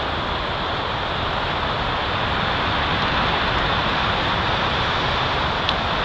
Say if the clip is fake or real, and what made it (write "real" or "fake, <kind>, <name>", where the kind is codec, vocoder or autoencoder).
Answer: real